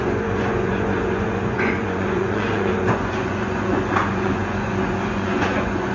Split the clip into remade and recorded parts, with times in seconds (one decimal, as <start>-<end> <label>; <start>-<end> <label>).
0.0-5.9 remade